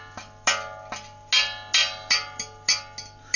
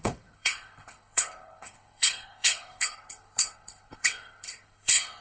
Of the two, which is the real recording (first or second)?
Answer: first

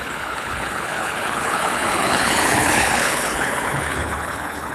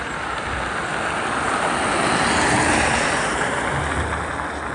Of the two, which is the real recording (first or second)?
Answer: second